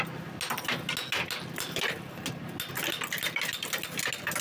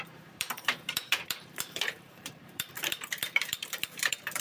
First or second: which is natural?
first